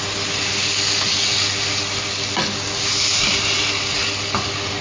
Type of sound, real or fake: real